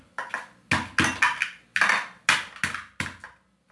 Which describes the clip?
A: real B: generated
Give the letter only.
A